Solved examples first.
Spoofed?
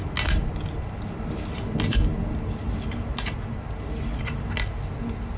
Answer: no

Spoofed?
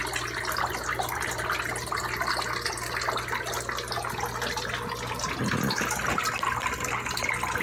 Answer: no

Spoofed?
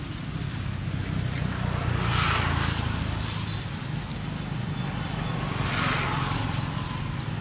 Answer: no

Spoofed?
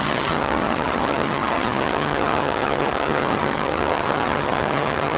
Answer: yes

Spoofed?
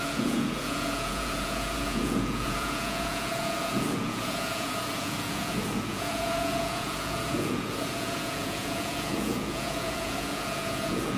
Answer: yes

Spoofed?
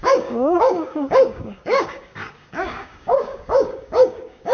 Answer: yes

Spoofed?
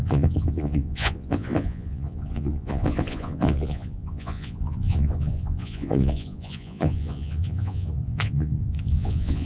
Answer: yes